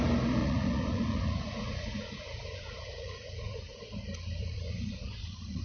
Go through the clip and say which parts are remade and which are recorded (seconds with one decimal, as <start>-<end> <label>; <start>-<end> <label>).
0.0-0.4 recorded; 0.4-3.8 remade; 3.8-4.4 recorded; 4.4-5.6 remade